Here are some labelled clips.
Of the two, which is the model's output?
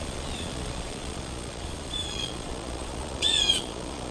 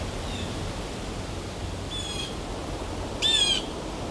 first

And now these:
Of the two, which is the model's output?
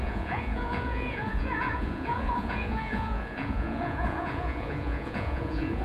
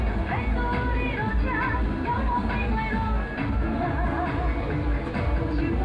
first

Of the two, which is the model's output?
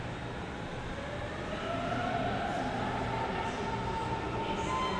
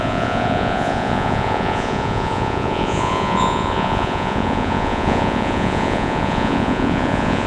second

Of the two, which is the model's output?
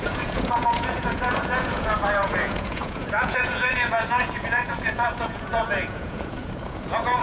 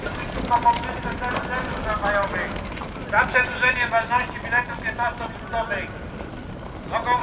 first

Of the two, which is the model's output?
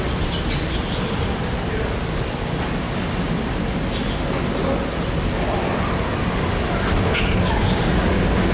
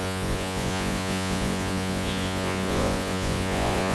second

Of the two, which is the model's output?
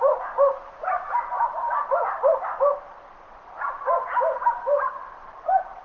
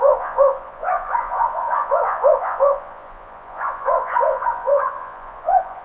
second